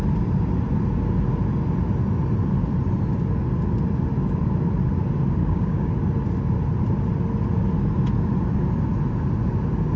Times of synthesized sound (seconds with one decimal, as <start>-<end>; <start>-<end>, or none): 5.4-5.9